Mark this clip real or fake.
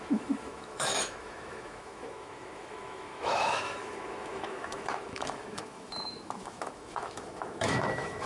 fake